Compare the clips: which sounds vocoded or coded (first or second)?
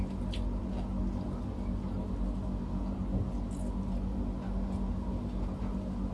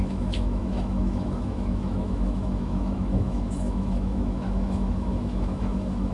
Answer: second